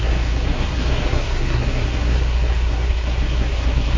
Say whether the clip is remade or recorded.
remade